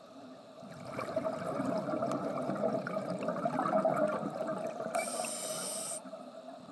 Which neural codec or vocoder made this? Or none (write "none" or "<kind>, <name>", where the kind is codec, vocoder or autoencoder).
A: vocoder, BigVGAN v2